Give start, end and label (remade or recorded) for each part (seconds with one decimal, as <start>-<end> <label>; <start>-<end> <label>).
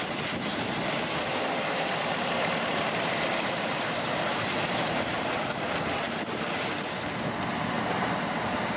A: 0.0-0.5 recorded; 0.5-5.6 remade; 5.6-8.8 recorded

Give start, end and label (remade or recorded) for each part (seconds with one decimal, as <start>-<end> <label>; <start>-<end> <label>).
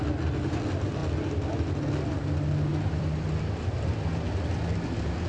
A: 0.0-2.7 recorded; 2.7-3.8 remade; 3.8-5.3 recorded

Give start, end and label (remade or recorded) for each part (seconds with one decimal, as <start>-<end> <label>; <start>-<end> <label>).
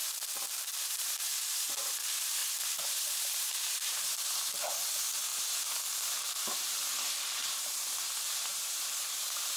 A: 0.0-0.9 recorded; 0.9-9.6 remade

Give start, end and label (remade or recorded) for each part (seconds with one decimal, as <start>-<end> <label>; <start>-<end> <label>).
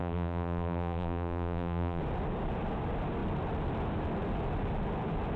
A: 0.0-2.0 remade; 2.0-5.4 recorded